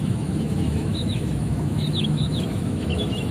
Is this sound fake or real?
fake